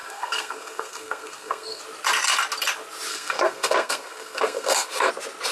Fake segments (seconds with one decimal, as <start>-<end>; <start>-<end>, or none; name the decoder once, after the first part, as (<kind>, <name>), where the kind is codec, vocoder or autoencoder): 0.0-1.8 (codec, SNAC); 3.1-5.1